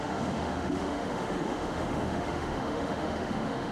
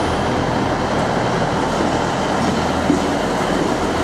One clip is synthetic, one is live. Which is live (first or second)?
second